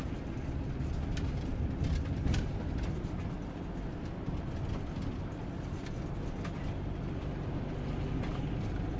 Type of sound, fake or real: real